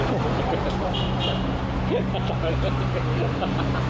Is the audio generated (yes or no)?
no